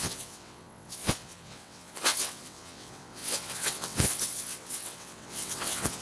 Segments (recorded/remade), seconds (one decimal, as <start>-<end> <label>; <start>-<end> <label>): 0.0-6.0 remade